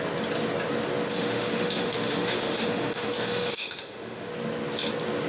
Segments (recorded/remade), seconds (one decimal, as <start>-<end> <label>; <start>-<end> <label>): 0.0-1.1 recorded; 1.1-4.3 remade; 4.3-5.3 recorded